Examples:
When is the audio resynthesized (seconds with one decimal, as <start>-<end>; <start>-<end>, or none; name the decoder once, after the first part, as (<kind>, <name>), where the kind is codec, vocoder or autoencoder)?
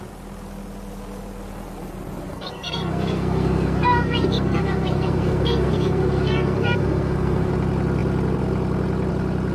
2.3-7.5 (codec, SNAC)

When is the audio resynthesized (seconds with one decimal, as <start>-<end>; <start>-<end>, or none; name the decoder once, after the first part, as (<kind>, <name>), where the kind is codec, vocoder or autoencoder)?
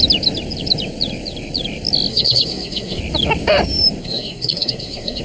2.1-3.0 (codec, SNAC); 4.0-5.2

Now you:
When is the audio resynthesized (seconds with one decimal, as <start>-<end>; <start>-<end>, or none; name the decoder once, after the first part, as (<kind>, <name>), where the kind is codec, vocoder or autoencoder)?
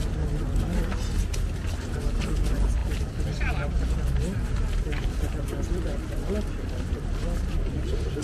none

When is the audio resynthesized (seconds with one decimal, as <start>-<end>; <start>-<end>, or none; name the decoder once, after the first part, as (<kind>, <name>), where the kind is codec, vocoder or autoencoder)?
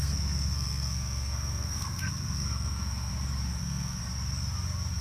0.0-3.1 (codec, SNAC); 3.6-4.0